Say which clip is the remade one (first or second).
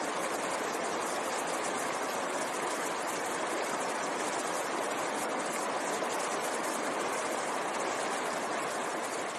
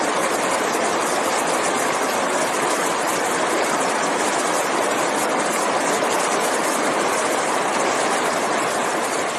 second